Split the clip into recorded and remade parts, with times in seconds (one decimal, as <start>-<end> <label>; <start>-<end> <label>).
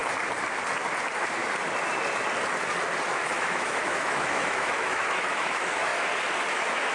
0.0-3.1 recorded; 3.1-5.9 remade; 5.9-6.5 recorded; 6.5-6.9 remade